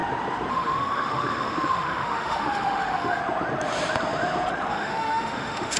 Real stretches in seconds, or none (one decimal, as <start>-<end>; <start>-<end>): 0.0-0.5; 3.2-4.7